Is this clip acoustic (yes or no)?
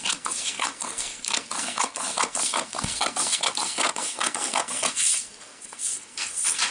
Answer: no